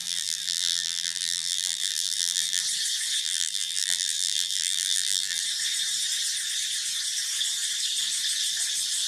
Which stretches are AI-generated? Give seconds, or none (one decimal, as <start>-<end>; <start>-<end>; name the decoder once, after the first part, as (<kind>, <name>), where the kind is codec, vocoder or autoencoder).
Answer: 0.0-2.6 (vocoder, BigVGAN v2); 3.2-5.4